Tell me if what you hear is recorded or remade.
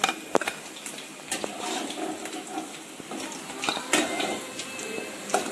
recorded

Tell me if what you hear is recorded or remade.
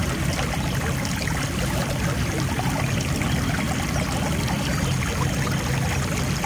recorded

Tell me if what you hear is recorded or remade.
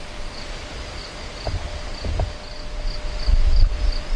recorded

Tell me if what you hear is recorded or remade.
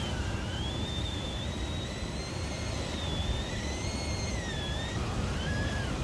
recorded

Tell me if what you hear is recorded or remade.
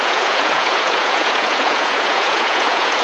remade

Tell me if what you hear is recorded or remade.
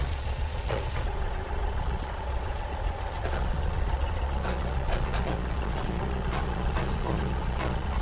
remade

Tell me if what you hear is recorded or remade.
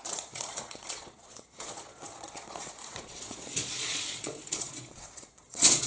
remade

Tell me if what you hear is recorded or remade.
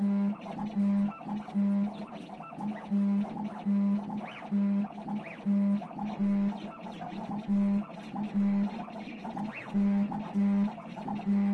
recorded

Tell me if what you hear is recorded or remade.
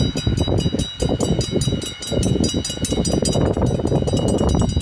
recorded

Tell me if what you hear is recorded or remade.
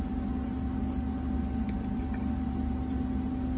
recorded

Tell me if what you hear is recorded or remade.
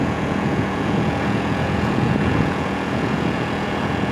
remade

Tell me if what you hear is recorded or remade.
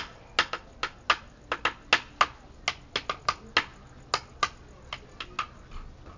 recorded